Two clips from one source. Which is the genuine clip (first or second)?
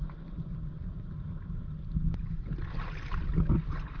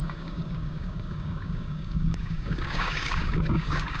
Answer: first